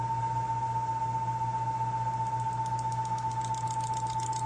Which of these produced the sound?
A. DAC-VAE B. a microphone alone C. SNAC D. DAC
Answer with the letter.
B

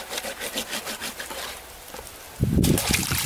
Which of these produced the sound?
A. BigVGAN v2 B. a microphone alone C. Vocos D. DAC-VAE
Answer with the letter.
B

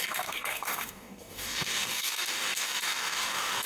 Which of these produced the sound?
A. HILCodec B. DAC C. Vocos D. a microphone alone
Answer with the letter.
B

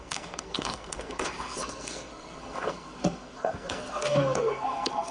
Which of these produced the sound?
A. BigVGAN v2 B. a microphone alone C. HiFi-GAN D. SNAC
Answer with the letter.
D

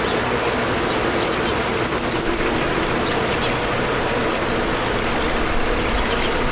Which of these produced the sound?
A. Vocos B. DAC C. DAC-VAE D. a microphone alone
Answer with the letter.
D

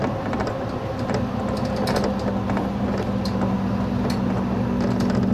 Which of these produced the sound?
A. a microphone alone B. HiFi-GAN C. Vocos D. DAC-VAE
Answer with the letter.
A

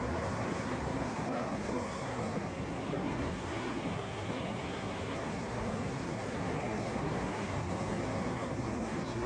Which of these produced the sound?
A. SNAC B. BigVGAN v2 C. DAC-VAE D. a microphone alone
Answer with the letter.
A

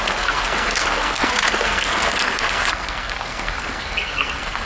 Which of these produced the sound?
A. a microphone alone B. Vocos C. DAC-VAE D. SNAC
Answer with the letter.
D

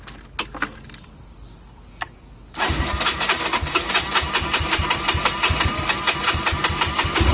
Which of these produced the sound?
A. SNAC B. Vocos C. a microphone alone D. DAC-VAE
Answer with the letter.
C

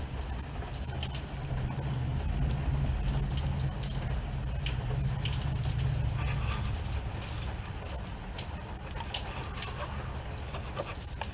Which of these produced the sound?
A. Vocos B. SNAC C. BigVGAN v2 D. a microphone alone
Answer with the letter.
D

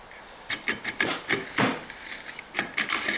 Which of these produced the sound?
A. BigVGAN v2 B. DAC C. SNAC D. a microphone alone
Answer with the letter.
A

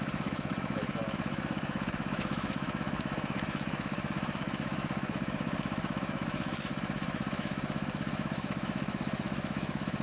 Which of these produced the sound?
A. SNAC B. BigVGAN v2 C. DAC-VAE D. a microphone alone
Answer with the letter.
C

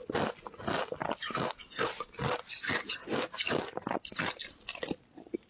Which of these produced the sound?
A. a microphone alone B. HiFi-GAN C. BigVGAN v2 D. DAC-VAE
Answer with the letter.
A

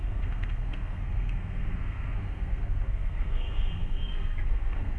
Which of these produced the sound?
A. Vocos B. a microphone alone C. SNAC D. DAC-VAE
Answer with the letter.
C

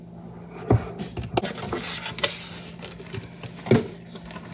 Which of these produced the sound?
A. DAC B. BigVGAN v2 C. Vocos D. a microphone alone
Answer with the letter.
D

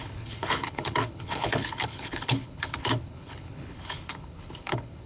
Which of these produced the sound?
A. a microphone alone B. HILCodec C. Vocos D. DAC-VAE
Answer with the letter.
B